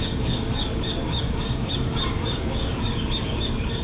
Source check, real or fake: fake